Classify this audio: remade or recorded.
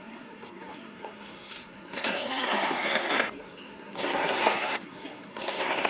remade